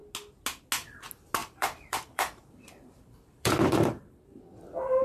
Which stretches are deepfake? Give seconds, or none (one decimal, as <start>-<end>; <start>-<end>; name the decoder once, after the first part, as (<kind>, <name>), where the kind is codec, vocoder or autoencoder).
1.4-4.4 (vocoder, BigVGAN v2)